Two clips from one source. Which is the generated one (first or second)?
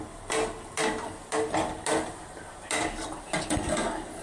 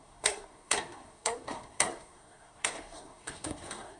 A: second